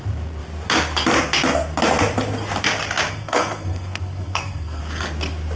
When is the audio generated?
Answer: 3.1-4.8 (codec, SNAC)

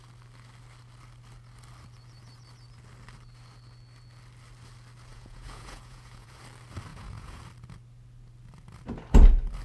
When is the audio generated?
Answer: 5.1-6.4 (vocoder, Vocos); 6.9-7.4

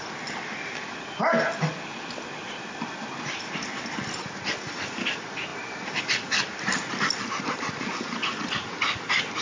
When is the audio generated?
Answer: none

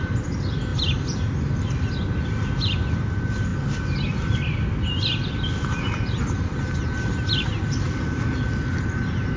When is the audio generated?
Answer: none

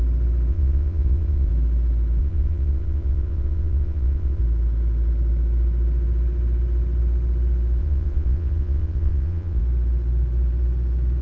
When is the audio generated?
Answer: 0.5-1.5 (vocoder, Vocos); 2.2-4.4; 7.8-9.6